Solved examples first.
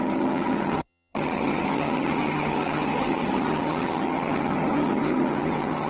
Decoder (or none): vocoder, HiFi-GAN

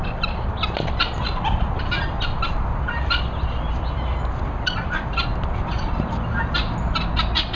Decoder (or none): none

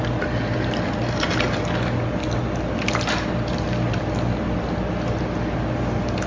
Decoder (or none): none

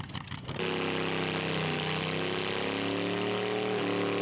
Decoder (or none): none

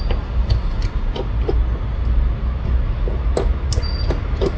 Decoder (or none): none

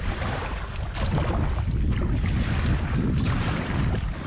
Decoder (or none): none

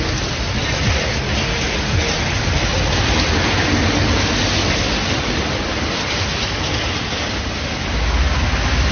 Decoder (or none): none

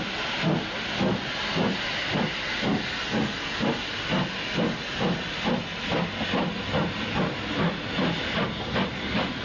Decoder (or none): none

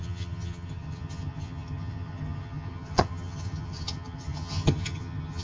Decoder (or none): vocoder, HiFi-GAN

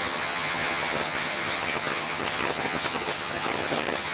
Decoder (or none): vocoder, HiFi-GAN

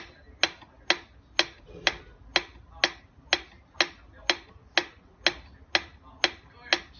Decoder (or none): none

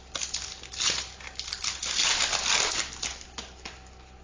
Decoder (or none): none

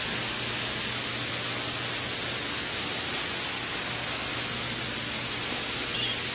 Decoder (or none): none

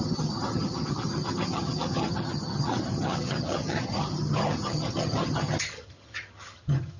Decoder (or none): vocoder, HiFi-GAN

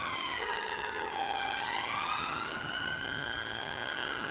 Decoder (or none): vocoder, HiFi-GAN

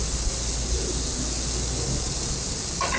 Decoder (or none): none